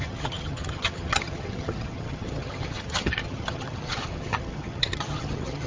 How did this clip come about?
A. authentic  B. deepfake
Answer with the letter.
B